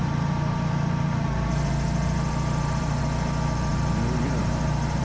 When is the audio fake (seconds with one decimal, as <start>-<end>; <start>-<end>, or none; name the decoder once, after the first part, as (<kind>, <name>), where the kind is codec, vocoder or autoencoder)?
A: 0.0-3.0 (vocoder, BigVGAN v2); 3.7-5.0